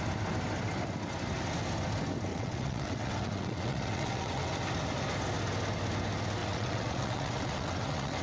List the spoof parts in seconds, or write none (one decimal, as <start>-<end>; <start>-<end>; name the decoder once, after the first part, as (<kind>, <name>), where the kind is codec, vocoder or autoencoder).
2.3-4.5 (vocoder, WaveNeXt); 6.4-8.2